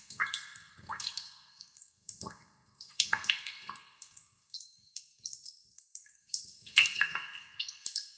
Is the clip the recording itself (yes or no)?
no